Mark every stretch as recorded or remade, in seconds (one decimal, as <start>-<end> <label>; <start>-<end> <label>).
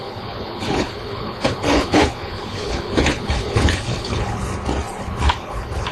0.0-4.5 remade; 4.5-5.0 recorded; 5.0-5.9 remade